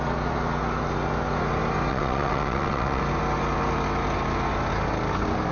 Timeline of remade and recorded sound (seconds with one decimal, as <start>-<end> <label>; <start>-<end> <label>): 0.0-1.9 recorded; 1.9-3.0 remade; 3.0-5.5 recorded